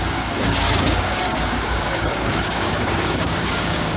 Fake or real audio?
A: fake